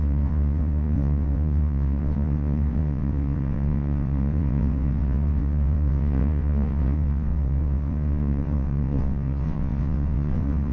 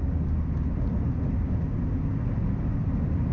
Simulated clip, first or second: first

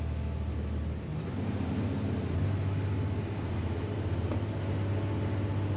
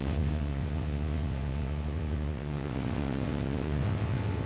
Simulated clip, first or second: second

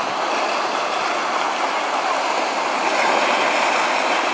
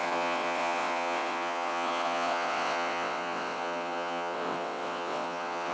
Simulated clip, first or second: second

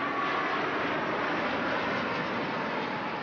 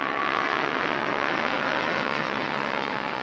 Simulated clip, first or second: second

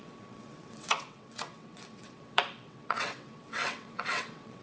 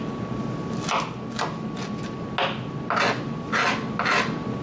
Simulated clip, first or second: first